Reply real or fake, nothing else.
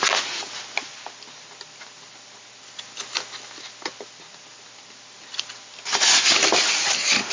real